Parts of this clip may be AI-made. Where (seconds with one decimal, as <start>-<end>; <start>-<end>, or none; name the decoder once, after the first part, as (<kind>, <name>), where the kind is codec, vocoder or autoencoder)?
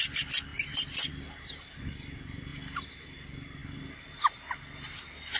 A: none